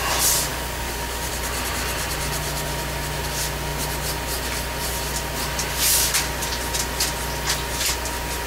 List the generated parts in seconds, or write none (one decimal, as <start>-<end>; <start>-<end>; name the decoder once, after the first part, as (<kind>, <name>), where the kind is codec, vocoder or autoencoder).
0.5-1.3 (codec, DAC)